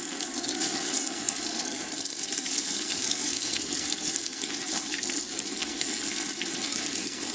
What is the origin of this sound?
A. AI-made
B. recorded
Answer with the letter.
A